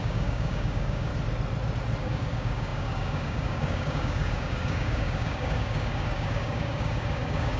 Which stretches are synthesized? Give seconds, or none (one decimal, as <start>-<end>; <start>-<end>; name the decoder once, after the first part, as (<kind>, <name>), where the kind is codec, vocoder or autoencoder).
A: 0.0-1.1 (codec, DAC); 2.0-7.6